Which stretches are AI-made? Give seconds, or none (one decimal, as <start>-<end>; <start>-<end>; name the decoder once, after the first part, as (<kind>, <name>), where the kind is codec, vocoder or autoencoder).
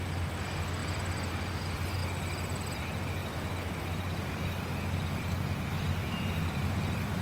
0.8-1.3 (vocoder, BigVGAN v2)